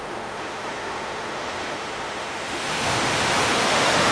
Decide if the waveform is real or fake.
fake